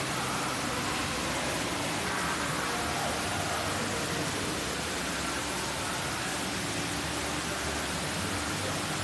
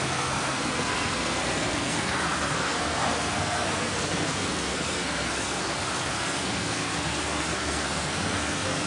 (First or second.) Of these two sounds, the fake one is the second